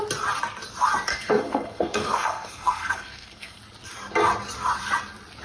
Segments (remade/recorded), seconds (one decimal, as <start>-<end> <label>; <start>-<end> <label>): 0.0-1.1 recorded; 1.1-3.6 remade; 3.6-5.4 recorded